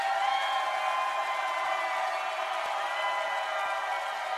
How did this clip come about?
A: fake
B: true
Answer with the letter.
B